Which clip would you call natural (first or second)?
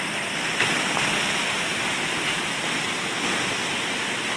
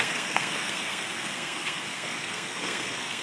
first